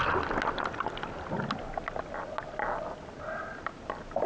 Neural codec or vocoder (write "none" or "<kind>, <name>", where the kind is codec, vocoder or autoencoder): none